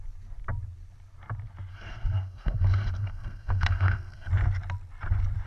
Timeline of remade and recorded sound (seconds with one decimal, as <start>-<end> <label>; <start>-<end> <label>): 0.0-1.7 recorded; 1.7-4.3 remade; 4.3-5.5 recorded